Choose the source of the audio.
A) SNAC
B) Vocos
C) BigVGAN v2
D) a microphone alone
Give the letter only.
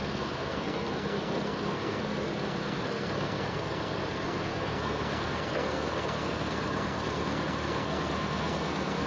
A